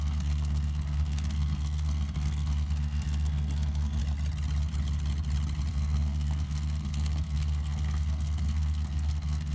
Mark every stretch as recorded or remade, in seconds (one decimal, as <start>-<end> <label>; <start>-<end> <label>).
0.0-4.0 remade; 4.0-5.7 recorded; 5.7-9.5 remade